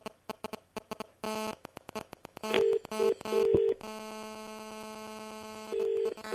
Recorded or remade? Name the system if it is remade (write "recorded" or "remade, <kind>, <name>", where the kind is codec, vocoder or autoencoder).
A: remade, autoencoder, DAC-VAE